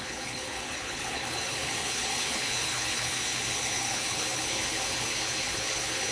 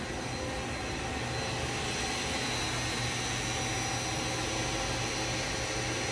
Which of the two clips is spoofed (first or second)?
first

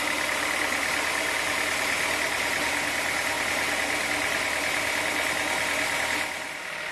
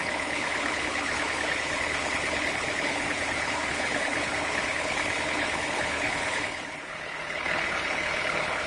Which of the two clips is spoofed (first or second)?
second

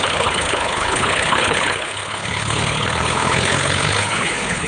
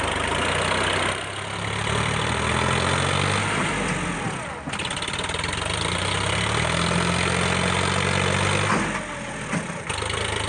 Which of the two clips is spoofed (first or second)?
first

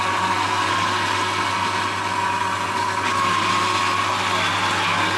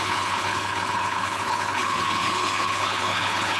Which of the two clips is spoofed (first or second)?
second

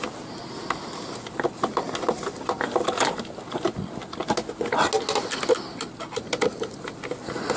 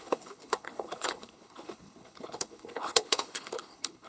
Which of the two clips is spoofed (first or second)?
second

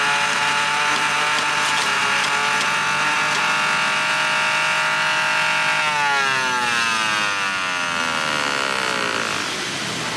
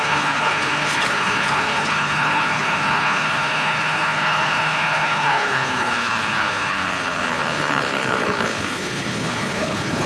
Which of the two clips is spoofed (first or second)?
second